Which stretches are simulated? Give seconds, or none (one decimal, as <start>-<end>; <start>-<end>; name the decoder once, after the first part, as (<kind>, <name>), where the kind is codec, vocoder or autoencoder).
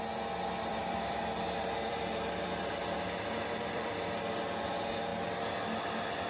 0.7-4.0 (vocoder, BigVGAN v2)